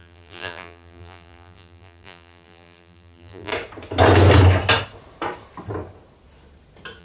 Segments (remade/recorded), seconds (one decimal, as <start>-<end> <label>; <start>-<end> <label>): 0.0-3.5 remade; 3.5-7.0 recorded